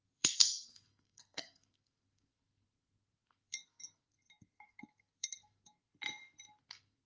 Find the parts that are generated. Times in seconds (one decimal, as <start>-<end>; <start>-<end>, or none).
0.0-5.9; 6.6-7.1